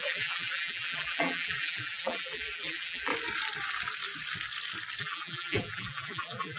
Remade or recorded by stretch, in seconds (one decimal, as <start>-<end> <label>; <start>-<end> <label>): 0.0-3.1 remade; 3.1-5.0 recorded; 5.0-6.6 remade